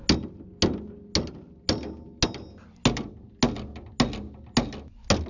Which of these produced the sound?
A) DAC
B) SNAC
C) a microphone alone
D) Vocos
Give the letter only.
C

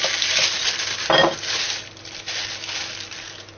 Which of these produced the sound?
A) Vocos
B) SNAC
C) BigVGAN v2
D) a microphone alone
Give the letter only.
D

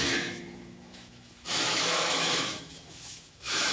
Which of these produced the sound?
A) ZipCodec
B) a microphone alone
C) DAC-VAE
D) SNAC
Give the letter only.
C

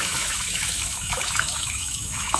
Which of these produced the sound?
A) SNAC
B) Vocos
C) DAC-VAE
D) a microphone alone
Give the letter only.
C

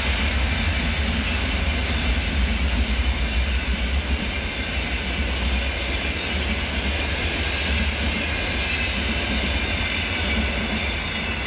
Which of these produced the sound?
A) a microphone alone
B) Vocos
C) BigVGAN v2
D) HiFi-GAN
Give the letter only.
A